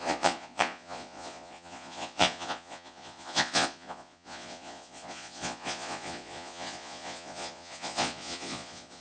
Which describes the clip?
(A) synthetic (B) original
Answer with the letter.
A